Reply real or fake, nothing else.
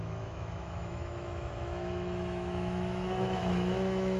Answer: fake